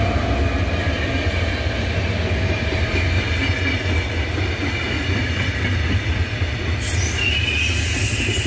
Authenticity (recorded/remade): recorded